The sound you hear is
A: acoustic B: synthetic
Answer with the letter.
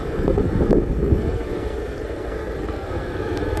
B